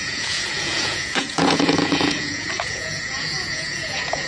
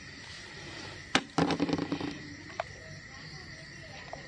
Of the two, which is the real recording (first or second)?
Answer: second